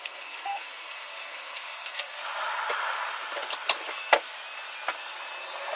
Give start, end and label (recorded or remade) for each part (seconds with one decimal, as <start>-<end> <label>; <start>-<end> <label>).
0.0-2.2 remade; 2.2-5.8 recorded